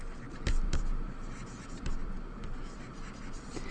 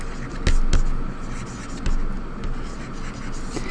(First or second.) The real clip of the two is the second